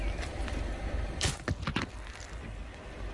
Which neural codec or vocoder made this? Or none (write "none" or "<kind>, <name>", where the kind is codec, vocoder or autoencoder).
none